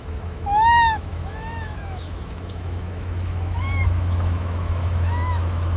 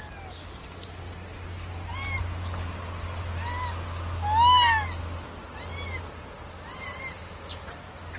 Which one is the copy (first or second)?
first